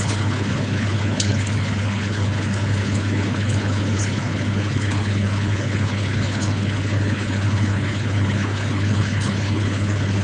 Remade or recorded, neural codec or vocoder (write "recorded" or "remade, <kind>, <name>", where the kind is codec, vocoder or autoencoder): remade, codec, HILCodec